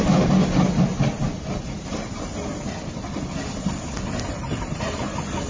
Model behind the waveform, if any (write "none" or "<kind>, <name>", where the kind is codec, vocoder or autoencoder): none